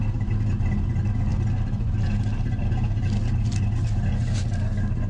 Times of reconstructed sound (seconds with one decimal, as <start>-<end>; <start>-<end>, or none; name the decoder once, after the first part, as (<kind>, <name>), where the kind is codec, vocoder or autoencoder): none